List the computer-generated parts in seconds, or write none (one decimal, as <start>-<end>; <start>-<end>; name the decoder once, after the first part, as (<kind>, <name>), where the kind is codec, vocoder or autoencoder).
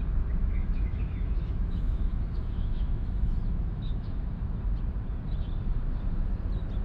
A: 0.4-4.4 (autoencoder, DAC-VAE)